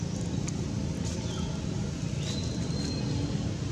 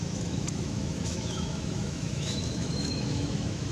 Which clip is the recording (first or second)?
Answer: first